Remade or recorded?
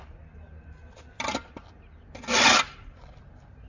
recorded